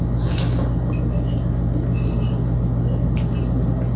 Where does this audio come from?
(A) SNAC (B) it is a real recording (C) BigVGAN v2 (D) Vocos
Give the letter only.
B